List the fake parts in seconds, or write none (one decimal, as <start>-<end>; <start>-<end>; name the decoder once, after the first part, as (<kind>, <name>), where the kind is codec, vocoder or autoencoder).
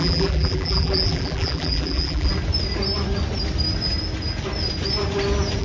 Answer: 0.0-2.3 (vocoder, BigVGAN v2)